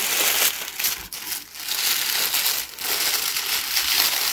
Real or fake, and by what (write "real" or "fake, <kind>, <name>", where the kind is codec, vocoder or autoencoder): real